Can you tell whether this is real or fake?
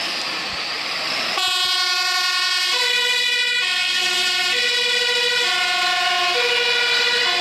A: real